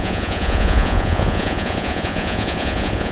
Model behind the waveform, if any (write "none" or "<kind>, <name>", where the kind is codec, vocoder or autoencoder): vocoder, Vocos